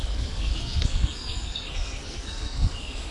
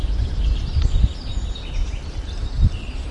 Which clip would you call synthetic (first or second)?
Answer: first